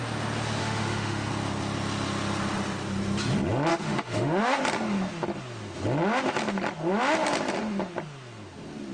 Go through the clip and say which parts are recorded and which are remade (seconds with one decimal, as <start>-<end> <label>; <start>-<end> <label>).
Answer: 0.0-0.6 recorded; 0.6-1.3 remade; 1.3-3.7 recorded; 3.7-4.6 remade; 4.6-8.9 recorded